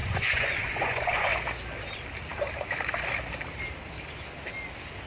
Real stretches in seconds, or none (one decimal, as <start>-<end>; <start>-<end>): 1.3-5.1